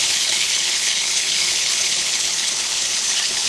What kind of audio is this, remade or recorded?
remade